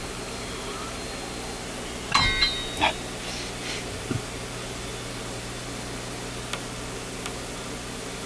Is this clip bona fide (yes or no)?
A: yes